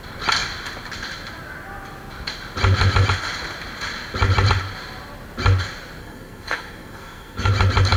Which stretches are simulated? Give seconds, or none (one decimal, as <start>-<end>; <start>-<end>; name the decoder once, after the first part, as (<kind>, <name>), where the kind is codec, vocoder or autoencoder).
6.0-7.5 (codec, SNAC)